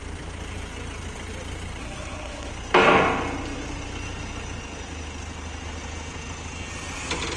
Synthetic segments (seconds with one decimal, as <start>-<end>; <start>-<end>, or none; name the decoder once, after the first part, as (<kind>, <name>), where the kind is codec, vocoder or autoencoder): 1.8-2.5 (codec, SNAC)